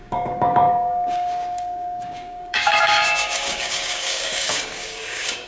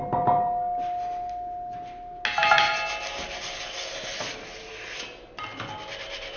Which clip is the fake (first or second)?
first